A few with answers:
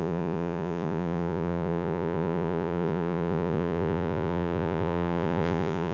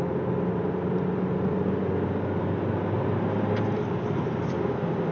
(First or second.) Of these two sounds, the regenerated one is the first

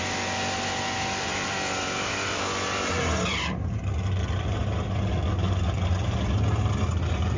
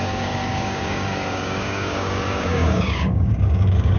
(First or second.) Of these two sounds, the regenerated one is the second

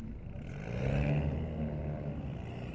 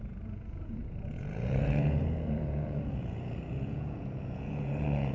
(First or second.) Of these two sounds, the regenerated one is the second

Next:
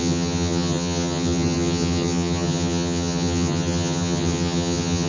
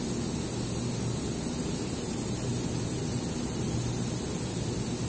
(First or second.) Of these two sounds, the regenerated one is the first